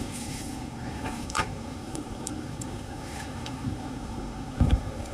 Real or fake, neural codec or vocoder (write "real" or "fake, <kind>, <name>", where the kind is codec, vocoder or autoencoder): fake, codec, SNAC